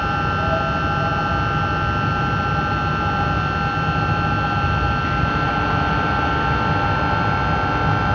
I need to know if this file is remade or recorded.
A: recorded